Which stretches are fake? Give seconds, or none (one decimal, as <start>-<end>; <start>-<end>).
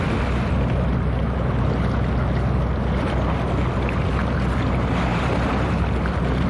5.1-5.8